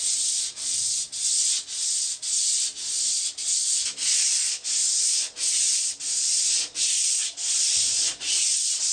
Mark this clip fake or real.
real